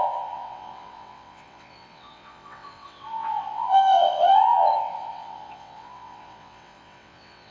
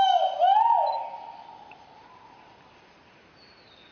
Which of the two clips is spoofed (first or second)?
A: first